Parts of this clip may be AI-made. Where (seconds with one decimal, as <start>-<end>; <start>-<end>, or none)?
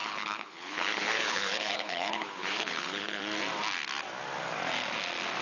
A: 0.0-3.2